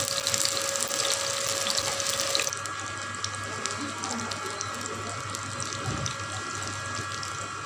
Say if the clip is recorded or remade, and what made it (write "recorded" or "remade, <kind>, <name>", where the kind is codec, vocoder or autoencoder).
recorded